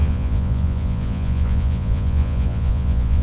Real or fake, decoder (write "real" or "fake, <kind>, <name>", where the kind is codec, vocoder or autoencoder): fake, vocoder, Vocos